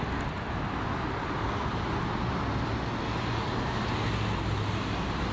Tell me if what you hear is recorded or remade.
recorded